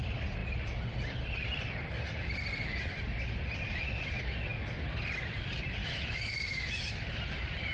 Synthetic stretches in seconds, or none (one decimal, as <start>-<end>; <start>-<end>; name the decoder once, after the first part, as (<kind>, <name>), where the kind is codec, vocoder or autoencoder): 5.8-7.2 (autoencoder, DAC-VAE)